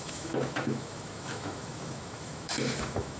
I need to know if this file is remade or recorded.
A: remade